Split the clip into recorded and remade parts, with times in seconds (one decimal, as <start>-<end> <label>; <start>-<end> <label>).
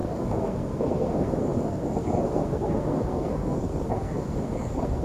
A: 0.0-5.0 remade